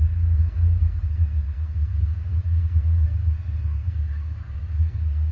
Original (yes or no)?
no